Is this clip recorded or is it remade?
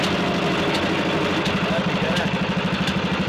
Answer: recorded